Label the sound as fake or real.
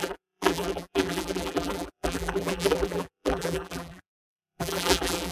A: fake